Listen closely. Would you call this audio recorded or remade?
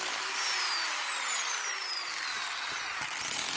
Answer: recorded